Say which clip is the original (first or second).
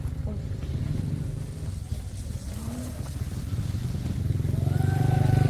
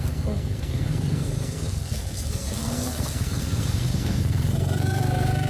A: first